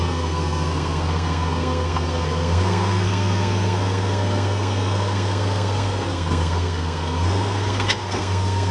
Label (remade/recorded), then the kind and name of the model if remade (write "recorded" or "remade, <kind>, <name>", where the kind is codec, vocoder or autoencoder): remade, codec, SNAC